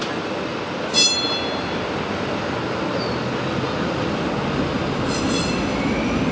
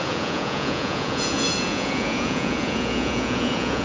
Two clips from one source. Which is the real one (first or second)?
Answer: first